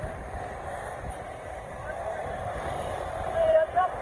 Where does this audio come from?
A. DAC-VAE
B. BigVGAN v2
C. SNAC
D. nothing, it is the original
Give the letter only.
B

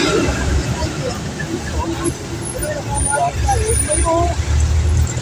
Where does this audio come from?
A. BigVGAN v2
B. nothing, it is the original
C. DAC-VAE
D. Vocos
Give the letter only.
B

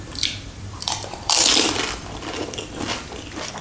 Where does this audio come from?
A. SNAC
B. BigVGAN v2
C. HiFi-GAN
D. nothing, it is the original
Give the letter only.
B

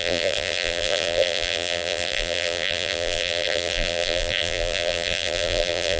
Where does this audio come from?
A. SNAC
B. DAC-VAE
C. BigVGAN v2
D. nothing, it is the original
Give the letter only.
C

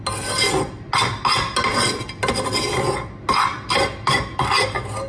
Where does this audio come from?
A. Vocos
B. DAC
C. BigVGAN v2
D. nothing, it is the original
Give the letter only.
D